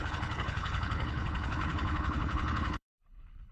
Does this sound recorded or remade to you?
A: remade